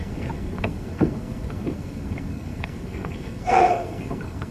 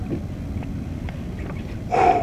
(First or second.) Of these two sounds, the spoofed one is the first